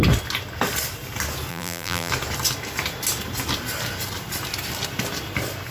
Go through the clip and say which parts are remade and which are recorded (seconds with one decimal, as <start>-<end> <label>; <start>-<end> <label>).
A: 0.0-1.5 recorded; 1.5-2.1 remade; 2.1-5.7 recorded

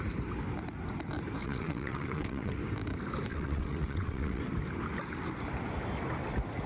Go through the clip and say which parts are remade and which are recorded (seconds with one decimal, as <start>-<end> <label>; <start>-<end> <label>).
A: 0.0-1.4 recorded; 1.4-2.6 remade; 2.6-3.3 recorded; 3.3-4.4 remade; 4.4-6.7 recorded

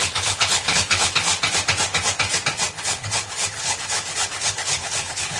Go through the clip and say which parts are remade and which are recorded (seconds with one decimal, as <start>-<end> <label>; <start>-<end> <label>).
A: 0.0-1.3 remade; 1.3-2.7 recorded; 2.7-5.4 remade

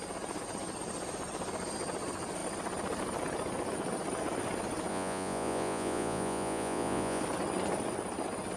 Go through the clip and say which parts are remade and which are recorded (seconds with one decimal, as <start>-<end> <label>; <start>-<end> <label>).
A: 0.0-4.9 recorded; 4.9-7.2 remade; 7.2-8.6 recorded

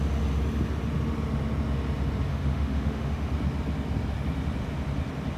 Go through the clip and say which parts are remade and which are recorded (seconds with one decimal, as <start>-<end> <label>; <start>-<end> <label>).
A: 0.0-2.3 recorded; 2.3-3.3 remade; 3.3-5.4 recorded

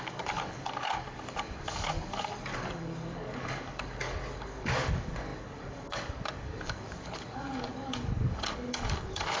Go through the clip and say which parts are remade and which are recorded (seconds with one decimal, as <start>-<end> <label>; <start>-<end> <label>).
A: 0.0-9.4 remade